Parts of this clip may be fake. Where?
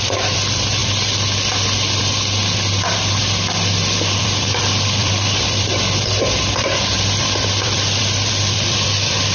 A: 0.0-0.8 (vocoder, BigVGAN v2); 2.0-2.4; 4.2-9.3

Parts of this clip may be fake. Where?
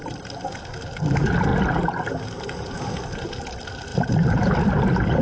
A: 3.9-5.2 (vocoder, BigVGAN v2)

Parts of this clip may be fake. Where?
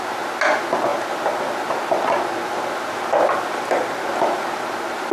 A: none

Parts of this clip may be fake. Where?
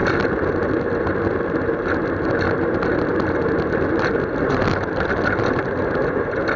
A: none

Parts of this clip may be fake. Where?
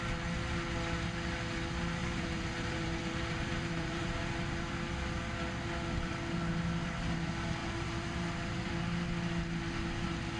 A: 2.0-4.2 (vocoder, BigVGAN v2); 7.6-8.7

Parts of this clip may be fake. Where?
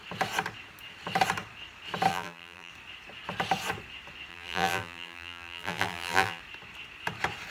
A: 2.1-2.7 (vocoder, BigVGAN v2); 4.3-6.4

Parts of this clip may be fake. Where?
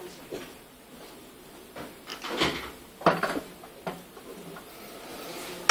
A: 0.0-2.1 (vocoder, BigVGAN v2); 3.2-5.1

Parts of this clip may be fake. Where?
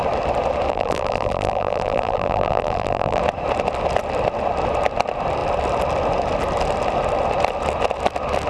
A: 0.7-3.2 (vocoder, BigVGAN v2)